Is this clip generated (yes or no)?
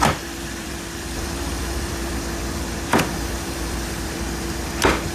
yes